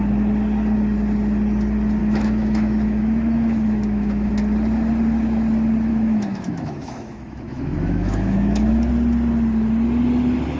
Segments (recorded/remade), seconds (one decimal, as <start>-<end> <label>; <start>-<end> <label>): 0.0-2.0 recorded; 2.0-4.3 remade; 4.3-5.9 recorded; 5.9-8.9 remade; 8.9-10.6 recorded